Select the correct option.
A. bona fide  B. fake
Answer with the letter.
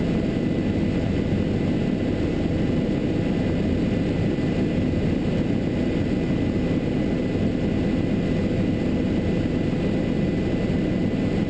A